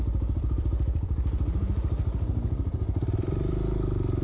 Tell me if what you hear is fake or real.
fake